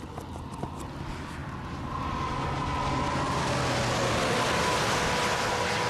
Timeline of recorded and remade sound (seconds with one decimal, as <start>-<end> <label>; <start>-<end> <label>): 0.0-5.9 recorded